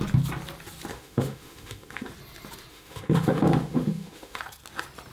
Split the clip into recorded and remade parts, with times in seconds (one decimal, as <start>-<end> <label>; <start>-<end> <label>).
0.0-0.9 recorded; 0.9-2.1 remade; 2.1-2.7 recorded; 2.7-4.4 remade; 4.4-5.1 recorded